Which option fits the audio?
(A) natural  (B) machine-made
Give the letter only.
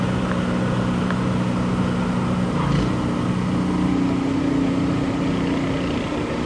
A